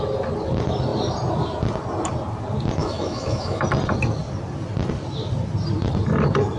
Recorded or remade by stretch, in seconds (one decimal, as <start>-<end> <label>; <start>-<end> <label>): 0.0-2.8 recorded; 2.8-3.6 remade; 3.6-6.6 recorded